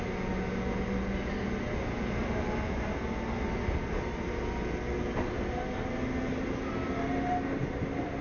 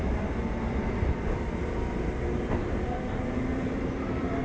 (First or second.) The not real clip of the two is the second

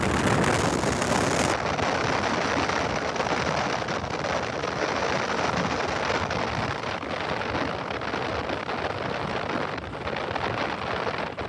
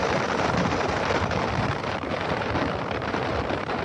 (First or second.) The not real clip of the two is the second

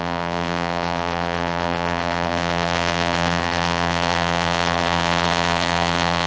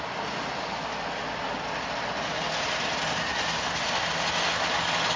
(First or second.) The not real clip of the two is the first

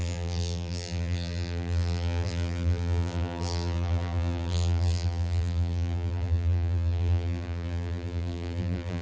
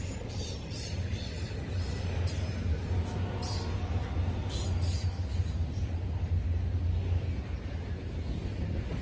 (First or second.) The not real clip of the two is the first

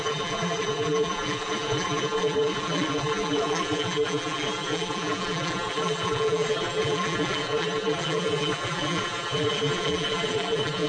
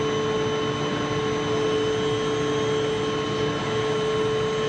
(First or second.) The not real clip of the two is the first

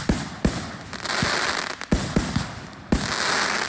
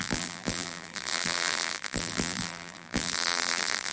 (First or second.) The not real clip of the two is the second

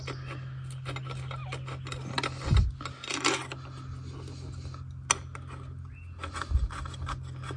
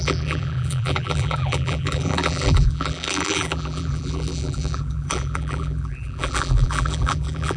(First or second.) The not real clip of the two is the second